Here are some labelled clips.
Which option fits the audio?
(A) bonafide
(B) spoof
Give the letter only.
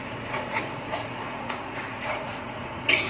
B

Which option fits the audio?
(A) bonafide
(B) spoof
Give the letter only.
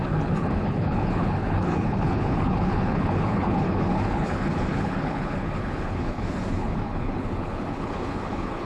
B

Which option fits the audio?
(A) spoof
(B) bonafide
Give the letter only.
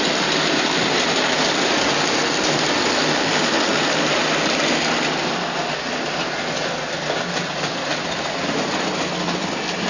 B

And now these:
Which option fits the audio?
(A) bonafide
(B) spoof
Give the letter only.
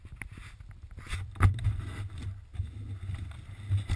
A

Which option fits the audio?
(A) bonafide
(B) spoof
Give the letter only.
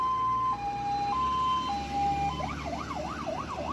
A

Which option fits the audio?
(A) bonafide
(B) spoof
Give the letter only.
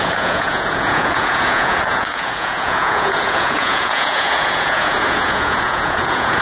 B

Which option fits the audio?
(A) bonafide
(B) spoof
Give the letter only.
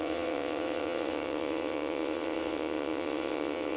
B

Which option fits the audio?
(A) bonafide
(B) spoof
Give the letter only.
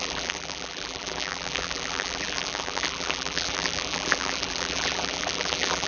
B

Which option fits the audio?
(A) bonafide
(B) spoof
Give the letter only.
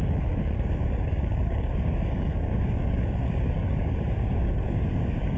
B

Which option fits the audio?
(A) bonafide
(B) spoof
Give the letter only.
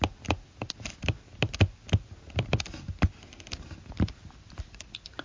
A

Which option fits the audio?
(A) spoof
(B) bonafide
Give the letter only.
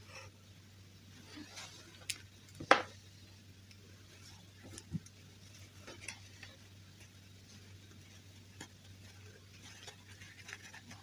B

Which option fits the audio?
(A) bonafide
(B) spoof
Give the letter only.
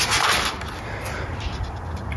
A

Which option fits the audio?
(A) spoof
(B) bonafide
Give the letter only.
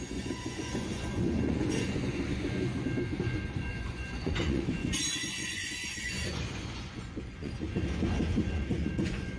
A